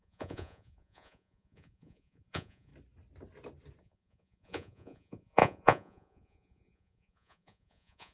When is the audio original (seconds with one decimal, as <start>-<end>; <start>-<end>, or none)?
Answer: 2.7-3.8